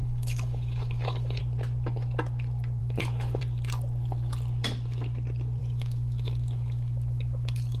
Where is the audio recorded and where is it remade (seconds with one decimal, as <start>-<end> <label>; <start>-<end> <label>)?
0.0-1.4 remade; 1.4-2.8 recorded; 2.8-3.4 remade; 3.4-5.6 recorded; 5.6-7.8 remade